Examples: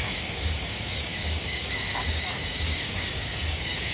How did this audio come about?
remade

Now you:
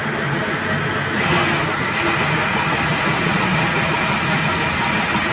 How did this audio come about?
recorded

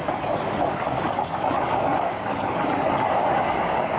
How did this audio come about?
remade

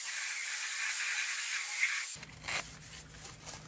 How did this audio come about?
recorded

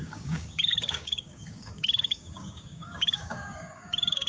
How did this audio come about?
remade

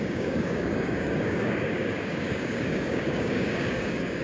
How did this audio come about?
remade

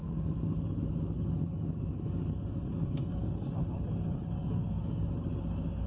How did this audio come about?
remade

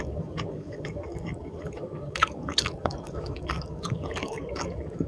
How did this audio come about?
remade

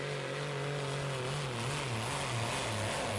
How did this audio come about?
recorded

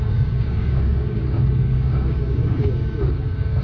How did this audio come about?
remade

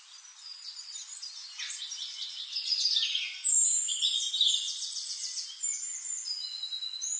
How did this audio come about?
recorded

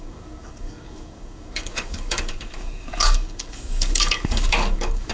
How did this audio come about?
remade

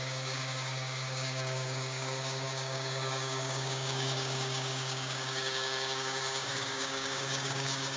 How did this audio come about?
remade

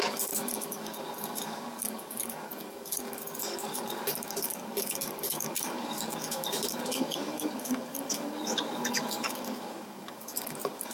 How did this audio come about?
remade